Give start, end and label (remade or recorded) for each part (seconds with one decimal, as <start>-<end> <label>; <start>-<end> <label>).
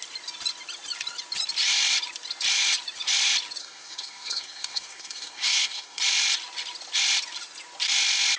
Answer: 0.0-3.6 recorded; 3.6-6.0 remade; 6.0-8.4 recorded